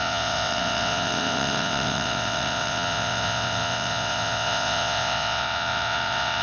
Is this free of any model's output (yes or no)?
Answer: no